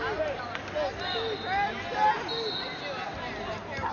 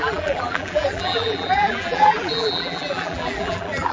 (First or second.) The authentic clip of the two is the first